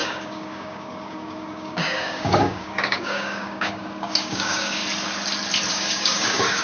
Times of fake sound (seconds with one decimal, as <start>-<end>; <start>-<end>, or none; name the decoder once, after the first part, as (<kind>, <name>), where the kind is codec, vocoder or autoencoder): 0.0-4.8 (codec, DAC); 5.7-6.6